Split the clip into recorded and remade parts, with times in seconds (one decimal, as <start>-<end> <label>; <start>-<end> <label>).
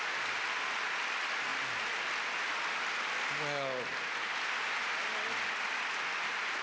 0.0-6.6 recorded